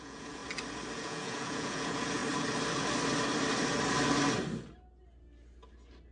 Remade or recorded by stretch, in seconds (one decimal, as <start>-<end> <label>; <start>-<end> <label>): 0.0-0.4 remade; 0.4-1.0 recorded; 1.0-2.2 remade; 2.2-6.1 recorded